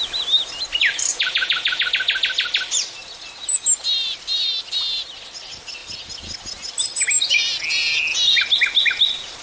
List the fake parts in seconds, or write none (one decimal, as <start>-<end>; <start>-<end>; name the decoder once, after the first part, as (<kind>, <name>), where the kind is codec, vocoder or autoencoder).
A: 1.1-1.9 (vocoder, Vocos)